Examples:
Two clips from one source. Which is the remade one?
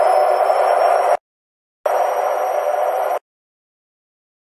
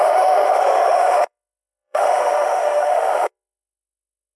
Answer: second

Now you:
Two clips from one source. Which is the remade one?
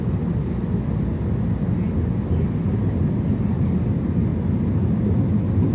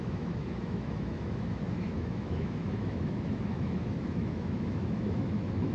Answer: second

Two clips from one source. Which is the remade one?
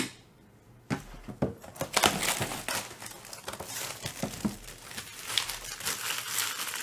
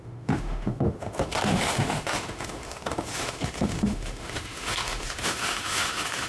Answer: second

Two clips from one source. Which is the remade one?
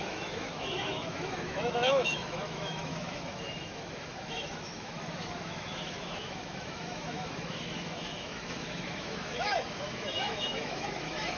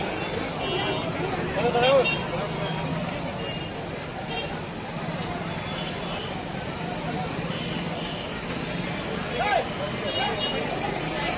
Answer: first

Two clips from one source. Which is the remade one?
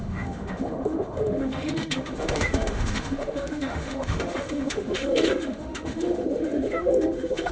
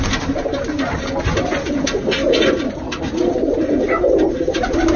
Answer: first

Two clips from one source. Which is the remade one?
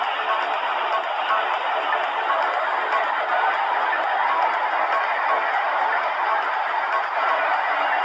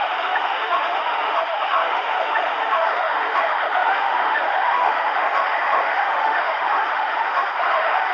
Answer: second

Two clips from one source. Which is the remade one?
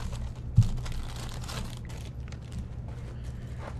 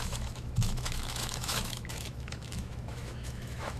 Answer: second